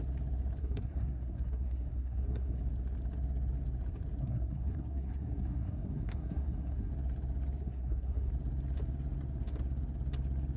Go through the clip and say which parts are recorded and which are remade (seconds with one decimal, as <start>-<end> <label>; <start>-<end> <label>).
0.0-0.6 recorded; 0.6-2.6 remade; 2.6-4.2 recorded; 4.2-6.9 remade; 6.9-7.6 recorded; 7.6-8.3 remade; 8.3-10.6 recorded